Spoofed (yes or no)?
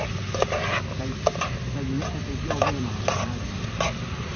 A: no